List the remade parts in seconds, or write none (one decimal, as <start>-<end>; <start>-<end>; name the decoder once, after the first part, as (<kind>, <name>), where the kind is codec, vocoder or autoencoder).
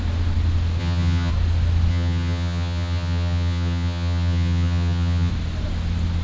0.8-1.3 (vocoder, HiFi-GAN); 1.9-5.3